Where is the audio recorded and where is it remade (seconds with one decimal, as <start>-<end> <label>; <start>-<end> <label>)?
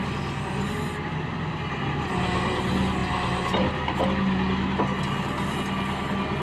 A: 0.0-6.4 recorded